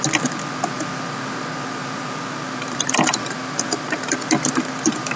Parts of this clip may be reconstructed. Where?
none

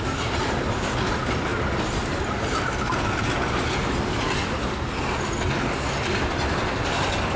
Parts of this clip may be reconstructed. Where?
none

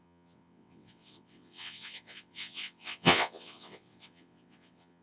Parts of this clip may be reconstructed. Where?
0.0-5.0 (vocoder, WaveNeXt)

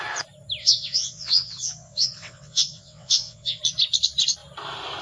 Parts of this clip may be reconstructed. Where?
0.6-3.6 (vocoder, WaveNeXt)